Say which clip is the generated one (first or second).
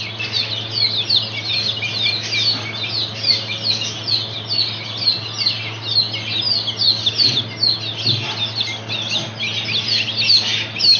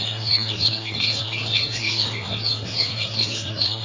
second